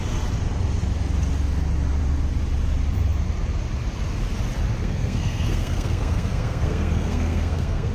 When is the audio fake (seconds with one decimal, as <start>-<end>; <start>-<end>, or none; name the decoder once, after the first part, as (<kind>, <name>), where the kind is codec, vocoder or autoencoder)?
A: 4.8-7.9 (codec, SNAC)